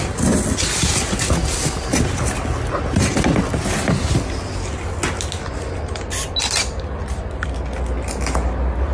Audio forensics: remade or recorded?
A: recorded